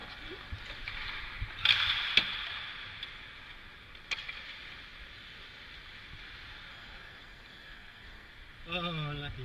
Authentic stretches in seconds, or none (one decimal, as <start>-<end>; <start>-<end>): 0.0-6.7; 8.3-9.4